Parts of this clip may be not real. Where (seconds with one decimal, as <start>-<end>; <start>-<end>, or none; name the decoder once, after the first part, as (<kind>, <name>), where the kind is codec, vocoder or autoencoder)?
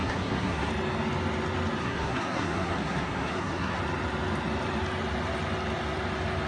0.0-0.7 (codec, SNAC); 1.8-3.8